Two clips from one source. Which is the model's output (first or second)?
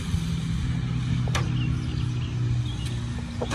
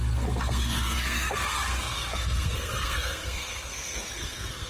second